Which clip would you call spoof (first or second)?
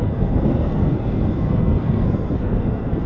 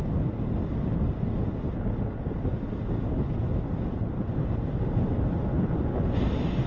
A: first